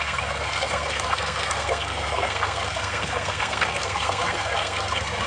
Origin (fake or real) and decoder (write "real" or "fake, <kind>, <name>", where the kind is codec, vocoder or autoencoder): fake, codec, SNAC